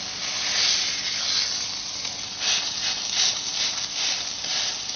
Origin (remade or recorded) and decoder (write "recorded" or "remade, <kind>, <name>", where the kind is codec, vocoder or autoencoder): recorded